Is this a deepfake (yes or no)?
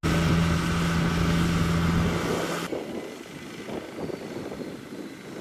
no